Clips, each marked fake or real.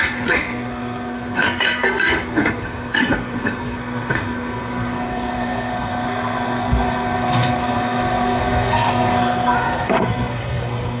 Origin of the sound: fake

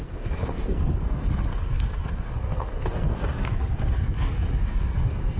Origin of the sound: fake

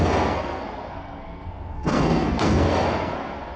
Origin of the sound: fake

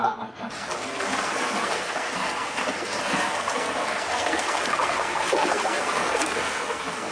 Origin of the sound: fake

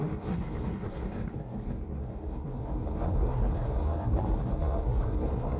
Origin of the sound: fake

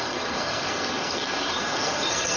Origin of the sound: fake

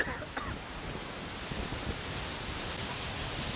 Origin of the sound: real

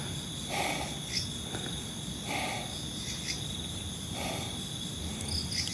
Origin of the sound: real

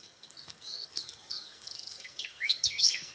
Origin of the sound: fake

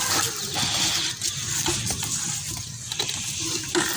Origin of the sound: real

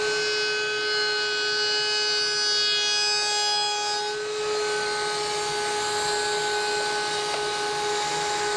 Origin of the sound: real